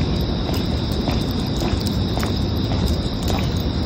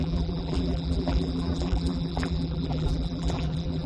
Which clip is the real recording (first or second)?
first